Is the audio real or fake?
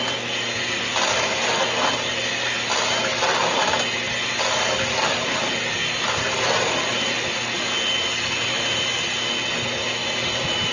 real